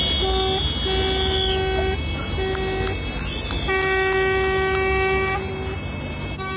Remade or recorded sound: recorded